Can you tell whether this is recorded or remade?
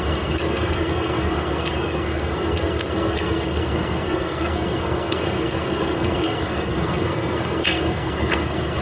remade